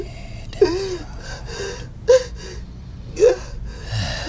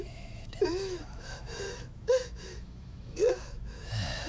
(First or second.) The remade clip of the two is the second